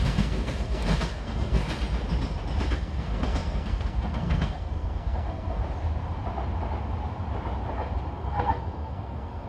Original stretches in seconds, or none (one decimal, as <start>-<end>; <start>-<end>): 1.6-2.7; 5.6-8.1